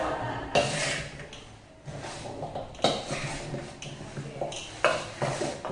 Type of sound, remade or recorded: recorded